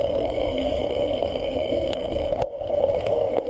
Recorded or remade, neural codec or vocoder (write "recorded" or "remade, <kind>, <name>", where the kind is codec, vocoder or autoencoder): remade, codec, SNAC